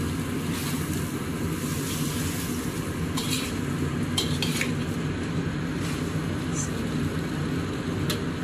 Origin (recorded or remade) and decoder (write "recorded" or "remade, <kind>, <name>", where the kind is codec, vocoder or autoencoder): recorded